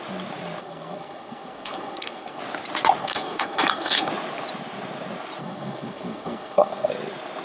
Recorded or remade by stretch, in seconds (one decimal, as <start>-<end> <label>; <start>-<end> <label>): 0.0-0.6 recorded; 0.6-2.4 remade; 2.4-3.0 recorded; 3.0-4.1 remade; 4.1-5.4 recorded; 5.4-6.9 remade; 6.9-7.4 recorded